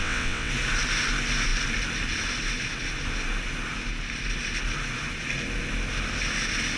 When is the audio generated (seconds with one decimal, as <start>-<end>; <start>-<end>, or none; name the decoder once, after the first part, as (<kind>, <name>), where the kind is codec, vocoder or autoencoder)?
0.0-0.5 (vocoder, WaveNeXt)